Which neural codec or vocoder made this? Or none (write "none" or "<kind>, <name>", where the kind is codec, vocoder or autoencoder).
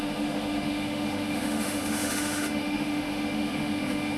autoencoder, DAC-VAE